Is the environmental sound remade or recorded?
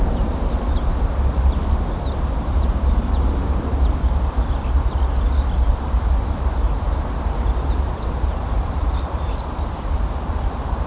recorded